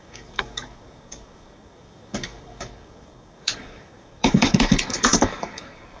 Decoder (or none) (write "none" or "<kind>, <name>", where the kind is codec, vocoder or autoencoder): codec, DAC